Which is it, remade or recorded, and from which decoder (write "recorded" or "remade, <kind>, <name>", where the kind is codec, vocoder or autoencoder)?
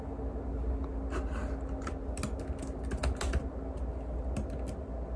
recorded